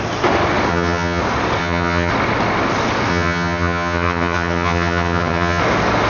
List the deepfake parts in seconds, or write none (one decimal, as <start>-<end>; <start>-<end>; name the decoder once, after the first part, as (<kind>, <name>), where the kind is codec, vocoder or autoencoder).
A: 0.7-1.2 (vocoder, HiFi-GAN); 1.6-2.1; 3.1-5.6

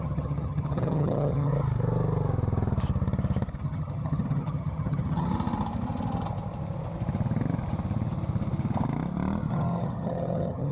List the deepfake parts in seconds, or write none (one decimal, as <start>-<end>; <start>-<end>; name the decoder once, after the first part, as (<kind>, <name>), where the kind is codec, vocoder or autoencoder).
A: 0.0-1.5 (vocoder, HiFi-GAN); 3.6-5.3; 9.5-10.7